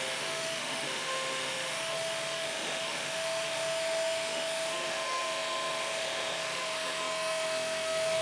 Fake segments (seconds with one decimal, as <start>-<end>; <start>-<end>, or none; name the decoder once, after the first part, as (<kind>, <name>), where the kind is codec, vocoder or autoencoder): 0.0-8.2 (autoencoder, DAC-VAE)